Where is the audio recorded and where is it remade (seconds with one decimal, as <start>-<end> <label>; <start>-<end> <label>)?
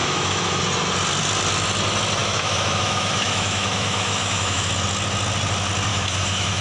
0.0-0.6 remade; 0.6-2.2 recorded; 2.2-4.7 remade; 4.7-5.9 recorded; 5.9-6.6 remade